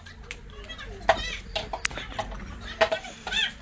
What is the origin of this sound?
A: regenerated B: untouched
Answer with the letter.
B